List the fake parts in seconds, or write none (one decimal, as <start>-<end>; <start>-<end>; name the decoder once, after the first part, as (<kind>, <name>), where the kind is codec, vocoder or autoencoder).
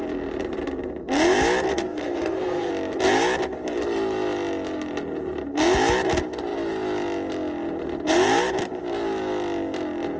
1.7-2.7 (codec, SNAC)